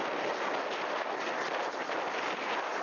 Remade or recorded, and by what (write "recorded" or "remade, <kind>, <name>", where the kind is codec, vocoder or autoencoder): recorded